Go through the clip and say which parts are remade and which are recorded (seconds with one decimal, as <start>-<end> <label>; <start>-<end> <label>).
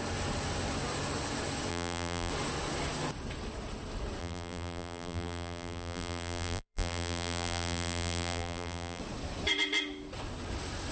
0.0-1.7 recorded; 1.7-2.3 remade; 2.3-4.2 recorded; 4.2-9.0 remade; 9.0-10.9 recorded